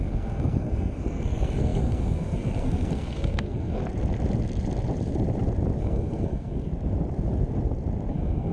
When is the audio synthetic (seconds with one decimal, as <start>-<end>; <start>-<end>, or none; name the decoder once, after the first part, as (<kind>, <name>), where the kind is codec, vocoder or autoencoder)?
0.0-3.8 (codec, SNAC); 5.8-6.7; 8.1-8.5